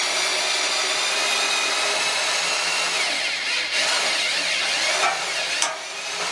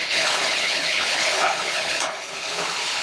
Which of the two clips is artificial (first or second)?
second